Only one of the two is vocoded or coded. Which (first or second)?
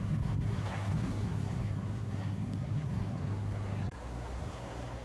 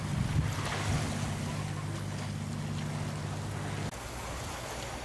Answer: first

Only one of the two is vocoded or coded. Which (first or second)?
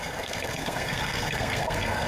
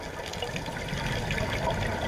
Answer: first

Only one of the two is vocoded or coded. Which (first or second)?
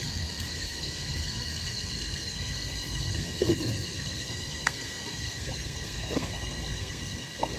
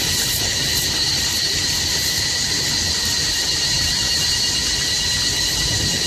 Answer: first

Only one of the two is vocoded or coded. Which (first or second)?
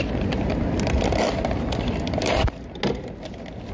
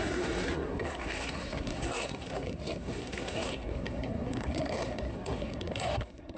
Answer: second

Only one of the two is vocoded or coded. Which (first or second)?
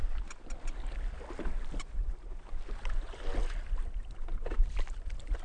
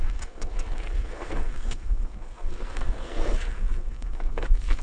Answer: second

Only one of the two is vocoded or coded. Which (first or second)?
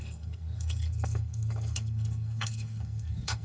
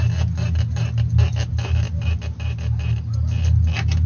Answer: first